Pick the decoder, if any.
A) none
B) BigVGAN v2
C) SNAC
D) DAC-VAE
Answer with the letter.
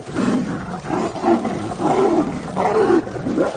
A